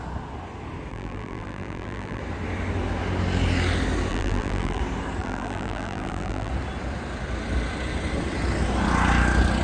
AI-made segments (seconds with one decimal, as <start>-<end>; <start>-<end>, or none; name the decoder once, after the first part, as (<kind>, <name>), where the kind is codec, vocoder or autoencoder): 0.9-2.2 (vocoder, BigVGAN v2); 4.1-4.8; 5.2-6.5